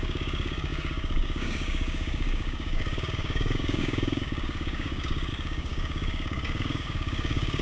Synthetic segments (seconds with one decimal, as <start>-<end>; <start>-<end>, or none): 0.0-7.6